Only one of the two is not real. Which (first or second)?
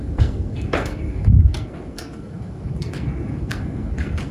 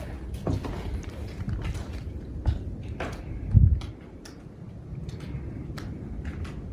first